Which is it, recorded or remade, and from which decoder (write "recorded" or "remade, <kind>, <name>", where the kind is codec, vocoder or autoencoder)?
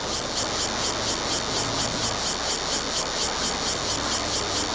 recorded